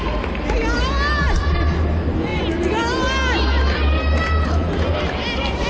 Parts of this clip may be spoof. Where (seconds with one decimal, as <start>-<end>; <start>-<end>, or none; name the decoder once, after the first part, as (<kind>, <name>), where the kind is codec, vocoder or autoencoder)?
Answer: none